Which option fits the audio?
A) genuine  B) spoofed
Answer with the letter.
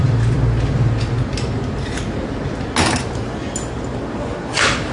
A